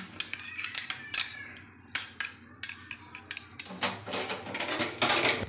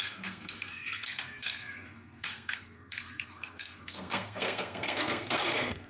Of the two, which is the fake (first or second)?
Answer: second